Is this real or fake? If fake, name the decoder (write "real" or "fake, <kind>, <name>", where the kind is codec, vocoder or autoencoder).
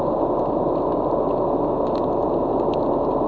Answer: real